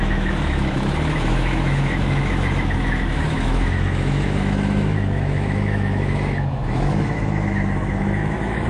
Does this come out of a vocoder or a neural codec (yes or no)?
yes